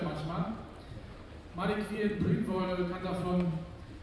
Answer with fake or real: fake